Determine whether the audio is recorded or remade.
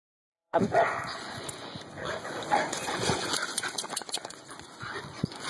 remade